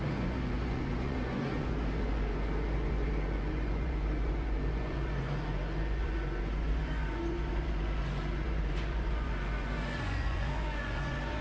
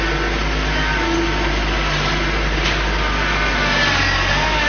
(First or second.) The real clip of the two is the second